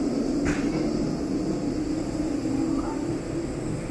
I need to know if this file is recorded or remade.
recorded